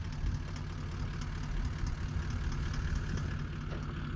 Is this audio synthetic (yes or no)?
no